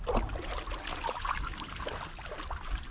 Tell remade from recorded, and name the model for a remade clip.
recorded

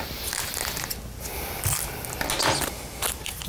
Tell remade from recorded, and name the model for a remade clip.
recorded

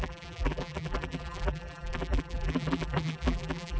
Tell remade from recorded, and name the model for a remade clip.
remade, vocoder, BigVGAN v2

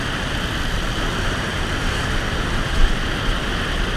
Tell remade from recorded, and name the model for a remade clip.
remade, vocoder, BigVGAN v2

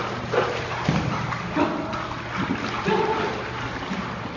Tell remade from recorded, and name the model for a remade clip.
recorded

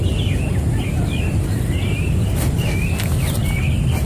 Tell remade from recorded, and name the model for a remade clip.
recorded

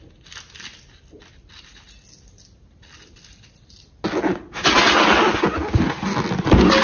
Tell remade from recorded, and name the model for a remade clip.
recorded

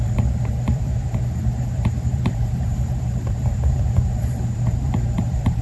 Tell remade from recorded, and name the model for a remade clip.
remade, vocoder, BigVGAN v2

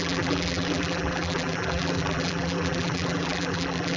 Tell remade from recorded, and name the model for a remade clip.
remade, vocoder, BigVGAN v2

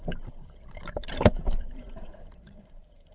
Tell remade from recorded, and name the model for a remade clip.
remade, vocoder, BigVGAN v2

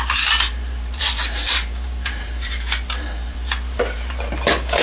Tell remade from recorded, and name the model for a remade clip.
remade, vocoder, BigVGAN v2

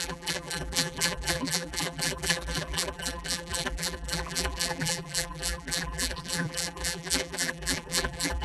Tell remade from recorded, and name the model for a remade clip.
remade, vocoder, BigVGAN v2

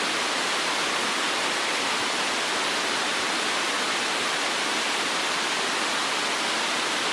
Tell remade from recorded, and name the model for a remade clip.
recorded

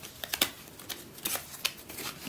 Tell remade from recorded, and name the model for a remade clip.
remade, vocoder, BigVGAN v2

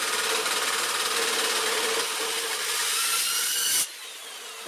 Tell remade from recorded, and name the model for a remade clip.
recorded